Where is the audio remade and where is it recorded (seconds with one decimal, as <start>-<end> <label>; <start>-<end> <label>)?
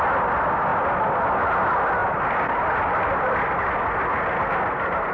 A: 0.0-5.1 recorded